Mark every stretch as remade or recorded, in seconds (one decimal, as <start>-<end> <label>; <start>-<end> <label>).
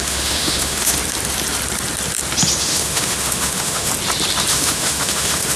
0.0-1.0 remade; 1.0-2.6 recorded; 2.6-3.9 remade; 3.9-4.5 recorded; 4.5-5.6 remade